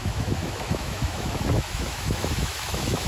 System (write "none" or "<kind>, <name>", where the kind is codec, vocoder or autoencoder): autoencoder, DAC-VAE